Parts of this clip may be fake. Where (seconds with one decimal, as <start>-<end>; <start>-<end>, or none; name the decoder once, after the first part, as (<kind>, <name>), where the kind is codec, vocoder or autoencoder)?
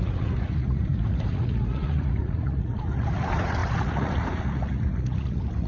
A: 0.0-5.7 (vocoder, Vocos)